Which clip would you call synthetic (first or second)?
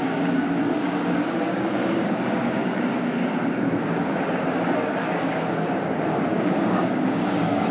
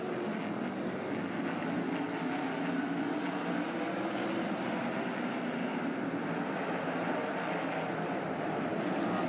first